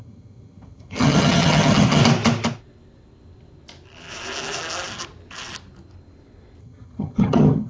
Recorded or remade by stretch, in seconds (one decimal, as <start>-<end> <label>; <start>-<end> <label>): 0.0-2.0 remade; 2.0-6.6 recorded; 6.6-7.7 remade